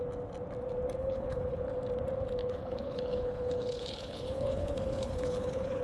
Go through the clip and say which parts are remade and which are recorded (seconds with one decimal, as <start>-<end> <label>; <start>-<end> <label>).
0.0-1.0 recorded; 1.0-1.6 remade; 1.6-2.4 recorded; 2.4-5.8 remade

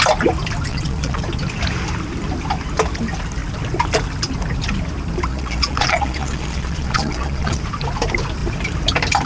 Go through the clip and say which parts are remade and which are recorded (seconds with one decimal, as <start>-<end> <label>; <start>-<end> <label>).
0.0-0.7 recorded; 0.7-1.2 remade; 1.2-5.3 recorded; 5.3-7.6 remade; 7.6-9.3 recorded

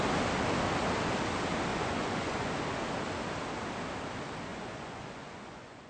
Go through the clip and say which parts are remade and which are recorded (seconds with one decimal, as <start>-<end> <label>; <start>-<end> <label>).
0.0-1.7 recorded; 1.7-2.5 remade; 2.5-4.5 recorded; 4.5-5.9 remade

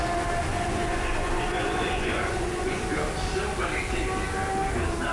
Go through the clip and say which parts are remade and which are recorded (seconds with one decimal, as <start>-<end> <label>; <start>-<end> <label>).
0.0-0.5 recorded; 0.5-2.8 remade; 2.8-5.1 recorded

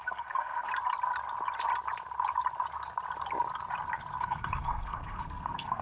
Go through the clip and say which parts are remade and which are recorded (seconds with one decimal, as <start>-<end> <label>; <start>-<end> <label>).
0.0-0.7 remade; 0.7-4.2 recorded; 4.2-5.8 remade

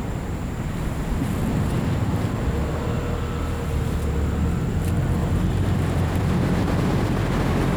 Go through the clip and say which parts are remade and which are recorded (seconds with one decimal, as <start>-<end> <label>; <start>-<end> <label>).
0.0-5.2 recorded; 5.2-7.2 remade; 7.2-7.8 recorded

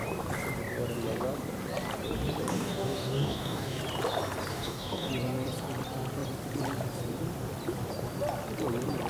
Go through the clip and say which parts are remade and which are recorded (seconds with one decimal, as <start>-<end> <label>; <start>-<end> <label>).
0.0-2.5 recorded; 2.5-3.8 remade; 3.8-4.5 recorded; 4.5-5.1 remade; 5.1-9.1 recorded